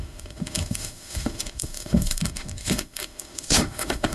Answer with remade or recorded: remade